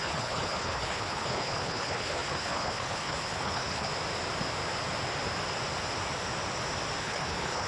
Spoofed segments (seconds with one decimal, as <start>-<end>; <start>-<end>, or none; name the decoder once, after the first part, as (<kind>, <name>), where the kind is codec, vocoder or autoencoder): 0.0-3.9 (codec, HILCodec); 7.0-7.7